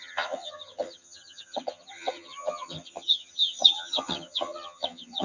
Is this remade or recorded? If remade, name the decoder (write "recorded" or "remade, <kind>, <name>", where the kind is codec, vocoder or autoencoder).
remade, vocoder, HiFi-GAN